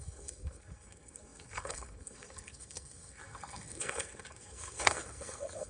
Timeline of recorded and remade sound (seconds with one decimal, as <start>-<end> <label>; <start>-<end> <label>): 0.0-5.7 remade